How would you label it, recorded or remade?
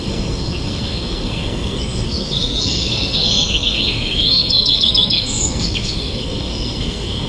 remade